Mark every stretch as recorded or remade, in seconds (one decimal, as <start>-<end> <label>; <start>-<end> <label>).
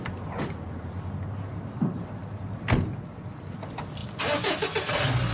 0.0-5.3 recorded